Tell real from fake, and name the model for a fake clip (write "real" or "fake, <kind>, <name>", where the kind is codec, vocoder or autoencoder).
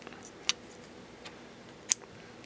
real